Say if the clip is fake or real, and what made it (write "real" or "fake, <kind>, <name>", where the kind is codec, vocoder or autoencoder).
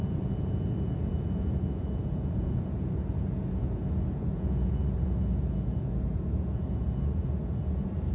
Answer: fake, vocoder, Vocos